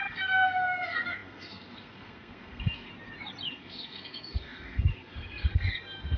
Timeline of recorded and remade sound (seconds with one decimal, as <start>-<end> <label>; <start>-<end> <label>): 0.0-2.9 remade; 2.9-3.5 recorded; 3.5-6.2 remade